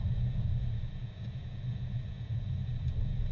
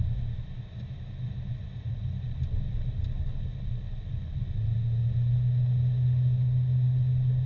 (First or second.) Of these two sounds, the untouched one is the second